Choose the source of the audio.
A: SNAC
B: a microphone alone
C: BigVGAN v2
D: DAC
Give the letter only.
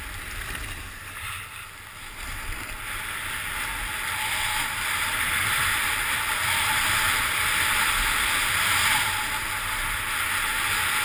B